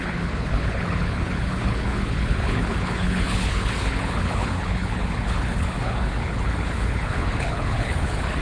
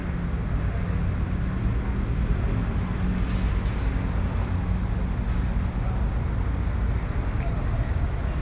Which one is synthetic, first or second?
first